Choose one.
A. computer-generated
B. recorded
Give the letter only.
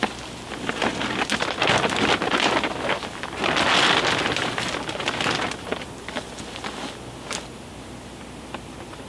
B